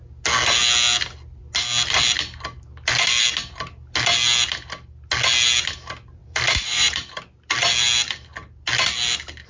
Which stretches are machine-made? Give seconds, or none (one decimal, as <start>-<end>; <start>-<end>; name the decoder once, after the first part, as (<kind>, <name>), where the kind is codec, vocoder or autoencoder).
6.2-7.2 (vocoder, BigVGAN v2)